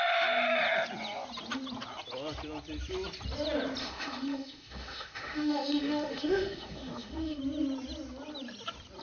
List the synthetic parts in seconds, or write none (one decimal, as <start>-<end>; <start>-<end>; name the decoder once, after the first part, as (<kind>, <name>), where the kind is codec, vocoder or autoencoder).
3.8-7.4 (autoencoder, DAC-VAE)